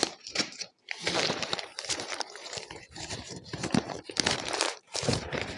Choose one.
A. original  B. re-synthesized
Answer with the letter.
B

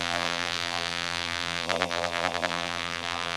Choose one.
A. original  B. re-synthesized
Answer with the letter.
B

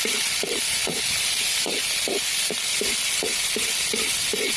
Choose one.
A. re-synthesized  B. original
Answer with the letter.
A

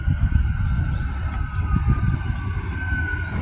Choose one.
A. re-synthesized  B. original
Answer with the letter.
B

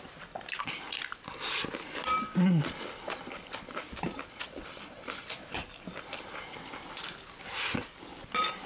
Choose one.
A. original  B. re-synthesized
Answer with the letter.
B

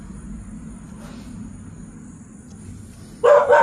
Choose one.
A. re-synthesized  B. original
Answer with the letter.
B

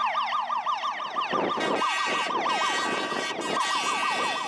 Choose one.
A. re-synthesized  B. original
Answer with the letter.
B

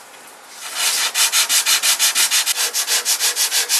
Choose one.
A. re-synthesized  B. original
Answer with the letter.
B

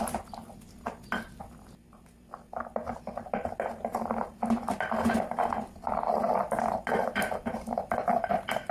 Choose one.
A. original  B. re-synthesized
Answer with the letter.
A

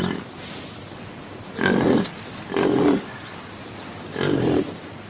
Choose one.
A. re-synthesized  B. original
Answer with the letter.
A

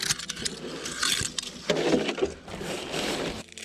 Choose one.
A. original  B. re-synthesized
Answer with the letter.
A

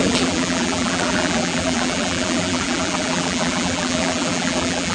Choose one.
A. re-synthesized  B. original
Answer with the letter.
A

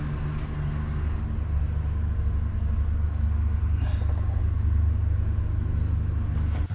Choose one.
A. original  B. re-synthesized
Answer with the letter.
A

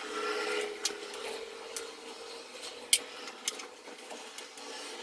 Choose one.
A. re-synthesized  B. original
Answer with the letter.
B